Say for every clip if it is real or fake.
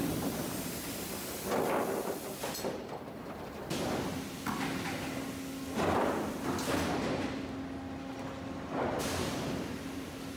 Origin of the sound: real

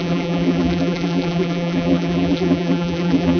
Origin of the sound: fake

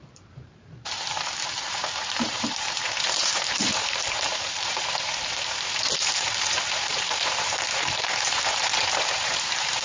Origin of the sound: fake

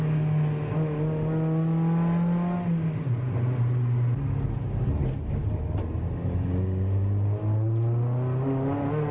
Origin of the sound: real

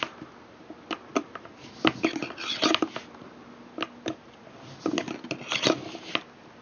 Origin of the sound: real